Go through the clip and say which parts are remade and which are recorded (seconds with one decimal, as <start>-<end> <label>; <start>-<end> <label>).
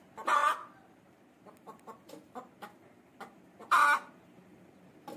0.0-5.2 recorded